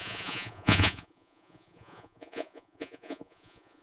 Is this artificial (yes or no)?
yes